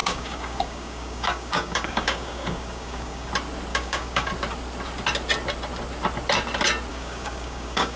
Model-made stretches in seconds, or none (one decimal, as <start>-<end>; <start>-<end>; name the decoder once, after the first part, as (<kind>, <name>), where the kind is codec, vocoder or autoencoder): 0.0-3.3 (codec, DAC); 3.7-4.3; 6.9-8.0